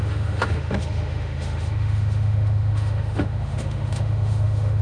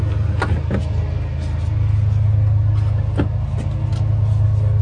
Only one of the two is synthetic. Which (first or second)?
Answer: first